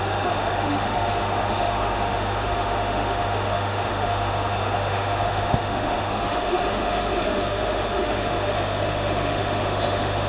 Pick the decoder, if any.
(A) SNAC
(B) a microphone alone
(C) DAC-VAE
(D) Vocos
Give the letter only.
C